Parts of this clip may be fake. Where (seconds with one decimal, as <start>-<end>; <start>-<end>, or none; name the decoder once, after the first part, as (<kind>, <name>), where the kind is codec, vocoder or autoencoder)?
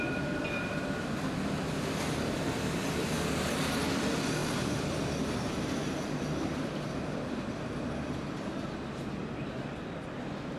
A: 4.4-5.1 (vocoder, BigVGAN v2); 5.8-7.4